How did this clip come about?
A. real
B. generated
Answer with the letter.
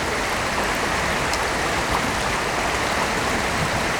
A